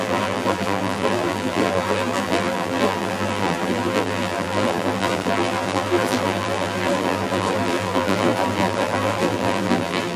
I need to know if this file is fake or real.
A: fake